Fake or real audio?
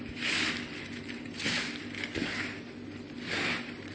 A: real